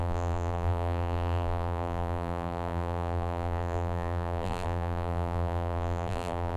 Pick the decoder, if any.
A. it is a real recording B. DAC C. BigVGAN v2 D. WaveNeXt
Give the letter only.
C